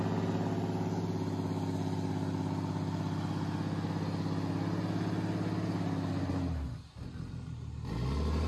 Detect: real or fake real